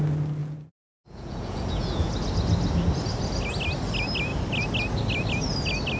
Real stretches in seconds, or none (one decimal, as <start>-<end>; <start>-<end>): 0.0-0.4; 2.1-6.0